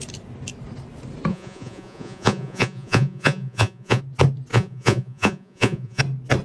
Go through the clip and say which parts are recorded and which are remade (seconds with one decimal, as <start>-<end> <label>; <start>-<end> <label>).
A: 0.0-1.3 recorded; 1.3-4.0 remade; 4.0-4.5 recorded; 4.5-6.0 remade; 6.0-6.4 recorded